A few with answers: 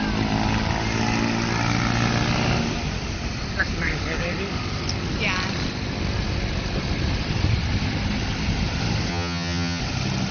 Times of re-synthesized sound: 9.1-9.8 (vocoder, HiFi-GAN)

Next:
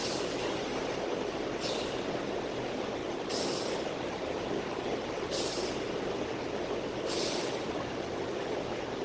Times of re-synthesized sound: none

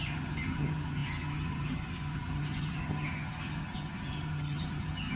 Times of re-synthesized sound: 0.0-5.2 (vocoder, HiFi-GAN)

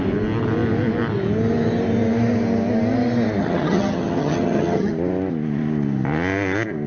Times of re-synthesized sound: 3.4-4.9 (vocoder, HiFi-GAN)

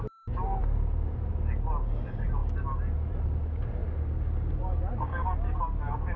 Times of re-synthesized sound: none

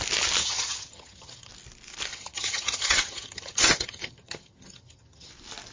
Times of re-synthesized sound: 0.4-1.5 (vocoder, HiFi-GAN); 2.1-5.3

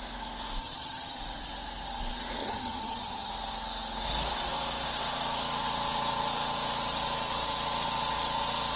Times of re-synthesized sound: 0.6-1.2 (vocoder, HiFi-GAN); 2.4-3.3